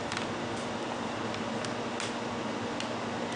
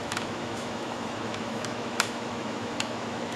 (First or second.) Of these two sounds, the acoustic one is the first